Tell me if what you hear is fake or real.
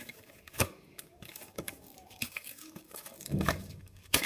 fake